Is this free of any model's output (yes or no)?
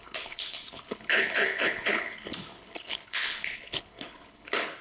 no